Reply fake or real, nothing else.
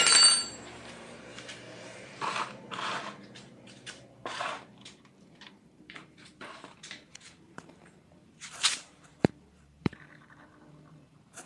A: fake